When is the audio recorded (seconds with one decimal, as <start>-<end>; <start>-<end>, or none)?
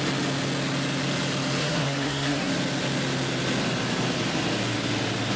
0.0-1.6; 2.5-5.4